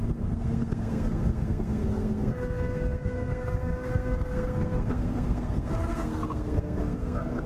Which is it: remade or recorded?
remade